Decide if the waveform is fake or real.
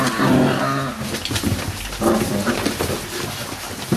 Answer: real